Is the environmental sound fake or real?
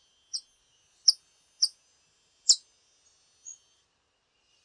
real